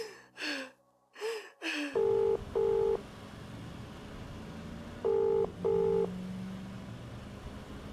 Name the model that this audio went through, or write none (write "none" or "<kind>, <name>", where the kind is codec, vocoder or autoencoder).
none